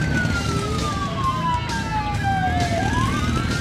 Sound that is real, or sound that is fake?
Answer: real